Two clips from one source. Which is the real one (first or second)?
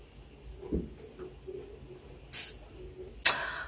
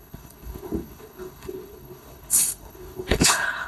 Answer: first